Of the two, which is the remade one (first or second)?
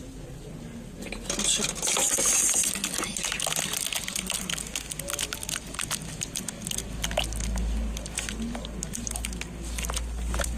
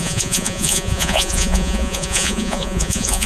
second